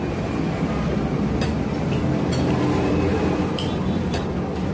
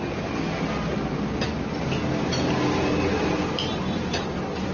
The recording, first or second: second